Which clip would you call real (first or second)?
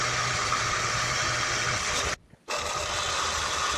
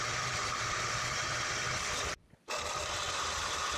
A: first